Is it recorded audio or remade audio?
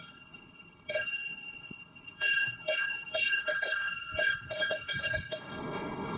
remade